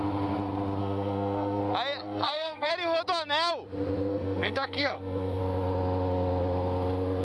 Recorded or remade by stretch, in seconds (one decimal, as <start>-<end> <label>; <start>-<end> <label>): 0.0-0.8 recorded; 0.8-1.6 remade; 1.6-2.0 recorded; 2.0-2.7 remade; 2.7-4.1 recorded; 4.1-5.4 remade; 5.4-7.2 recorded